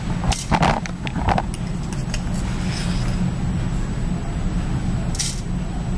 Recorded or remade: recorded